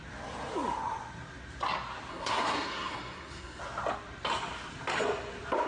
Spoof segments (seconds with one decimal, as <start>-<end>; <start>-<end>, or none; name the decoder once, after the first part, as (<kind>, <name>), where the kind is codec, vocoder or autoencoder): 2.1-3.6 (codec, SNAC)

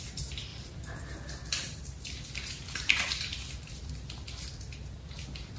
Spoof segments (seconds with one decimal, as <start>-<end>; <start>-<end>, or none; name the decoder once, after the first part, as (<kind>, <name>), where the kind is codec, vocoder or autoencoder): 0.5-3.9 (vocoder, BigVGAN v2)

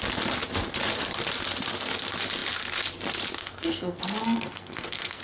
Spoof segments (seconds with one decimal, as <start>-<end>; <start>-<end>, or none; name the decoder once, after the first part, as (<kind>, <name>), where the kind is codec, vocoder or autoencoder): 3.4-5.2 (codec, SNAC)

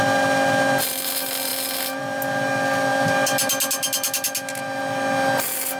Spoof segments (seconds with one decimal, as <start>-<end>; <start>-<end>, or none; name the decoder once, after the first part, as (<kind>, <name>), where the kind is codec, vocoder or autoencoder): none

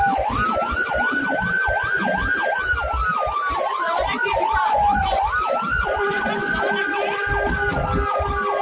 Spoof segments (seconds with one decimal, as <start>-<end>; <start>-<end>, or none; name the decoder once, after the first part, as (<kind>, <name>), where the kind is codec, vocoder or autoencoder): 3.7-5.2 (vocoder, Vocos); 5.7-6.3

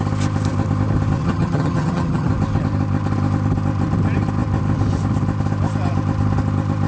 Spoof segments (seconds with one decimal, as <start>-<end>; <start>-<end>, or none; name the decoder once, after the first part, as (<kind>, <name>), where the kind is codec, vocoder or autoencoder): 1.2-2.3 (vocoder, HiFi-GAN)

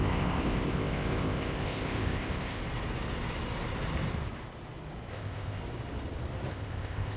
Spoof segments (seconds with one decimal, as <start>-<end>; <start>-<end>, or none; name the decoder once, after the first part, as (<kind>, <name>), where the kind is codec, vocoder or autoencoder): 0.0-2.6 (codec, ZipCodec); 5.1-5.6; 6.5-7.2